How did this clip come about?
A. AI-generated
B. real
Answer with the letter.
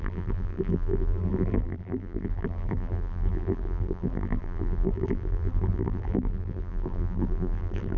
A